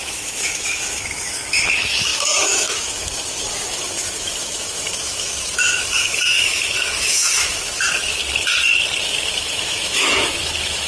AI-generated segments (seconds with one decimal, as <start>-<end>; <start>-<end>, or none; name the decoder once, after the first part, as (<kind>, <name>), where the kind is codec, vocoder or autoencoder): 0.0-8.2 (autoencoder, DAC-VAE); 9.0-10.9